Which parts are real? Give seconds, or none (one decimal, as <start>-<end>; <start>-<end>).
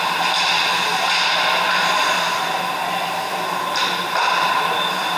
0.0-5.2